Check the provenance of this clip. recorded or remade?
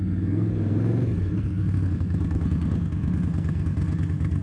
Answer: remade